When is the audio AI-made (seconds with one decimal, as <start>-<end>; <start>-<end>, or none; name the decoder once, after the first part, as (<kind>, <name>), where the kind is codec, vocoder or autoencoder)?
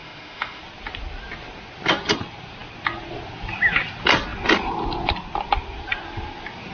0.0-0.6 (autoencoder, DAC-VAE)